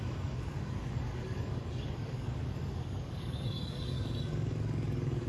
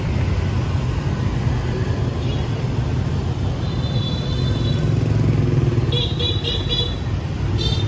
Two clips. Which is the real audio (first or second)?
second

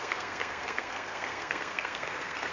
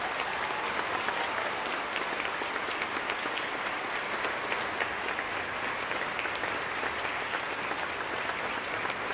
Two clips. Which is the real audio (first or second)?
second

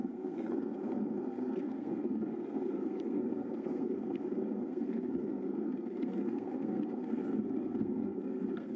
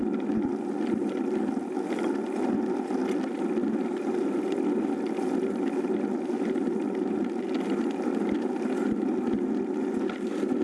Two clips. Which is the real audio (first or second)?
second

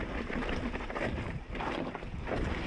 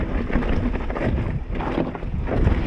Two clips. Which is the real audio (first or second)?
second